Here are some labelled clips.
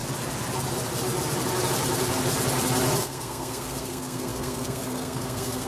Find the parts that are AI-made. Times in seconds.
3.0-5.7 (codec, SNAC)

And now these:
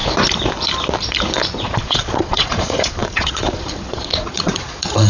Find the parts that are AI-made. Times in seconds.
1.6-5.1 (vocoder, Vocos)

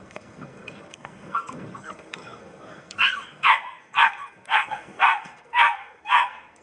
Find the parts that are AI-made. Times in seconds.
0.0-6.6 (codec, SNAC)

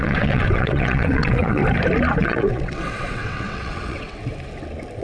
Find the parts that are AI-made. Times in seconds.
0.0-1.6 (vocoder, WaveNeXt); 2.2-4.2